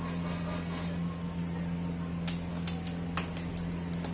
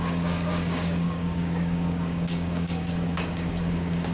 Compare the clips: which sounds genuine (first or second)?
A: first